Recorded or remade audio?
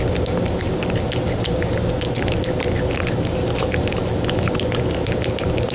recorded